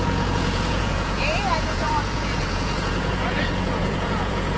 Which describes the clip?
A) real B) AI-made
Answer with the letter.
B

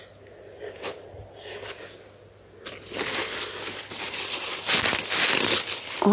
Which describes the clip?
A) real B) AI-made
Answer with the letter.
A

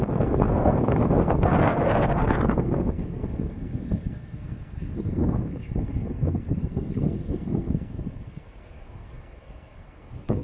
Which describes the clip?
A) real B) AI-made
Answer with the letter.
B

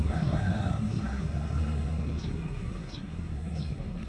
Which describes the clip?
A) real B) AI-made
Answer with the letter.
B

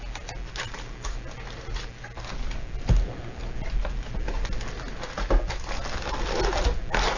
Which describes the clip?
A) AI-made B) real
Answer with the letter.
B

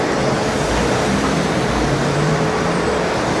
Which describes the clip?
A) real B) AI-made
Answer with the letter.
B